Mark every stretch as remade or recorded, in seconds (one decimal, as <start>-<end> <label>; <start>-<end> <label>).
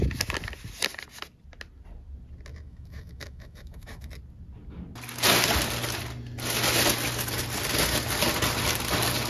0.0-2.5 recorded; 2.5-4.1 remade; 4.1-9.3 recorded